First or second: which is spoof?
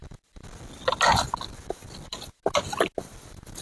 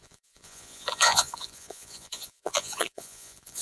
second